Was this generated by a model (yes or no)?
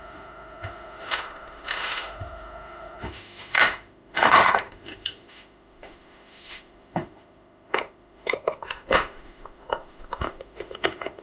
yes